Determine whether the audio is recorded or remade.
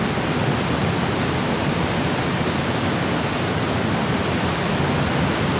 recorded